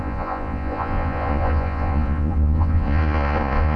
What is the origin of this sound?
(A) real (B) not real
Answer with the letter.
B